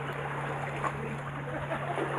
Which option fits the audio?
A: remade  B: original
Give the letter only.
B